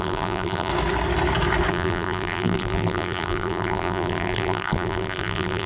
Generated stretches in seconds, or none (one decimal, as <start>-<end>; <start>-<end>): 0.0-0.7; 1.7-5.7